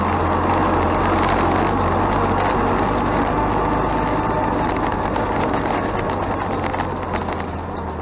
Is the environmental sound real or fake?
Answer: real